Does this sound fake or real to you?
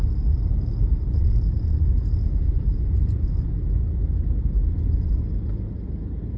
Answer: real